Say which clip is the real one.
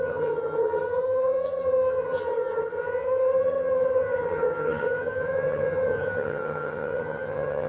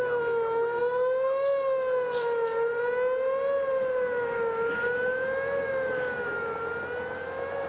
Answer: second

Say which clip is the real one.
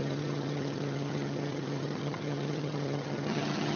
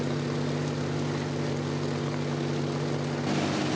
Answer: second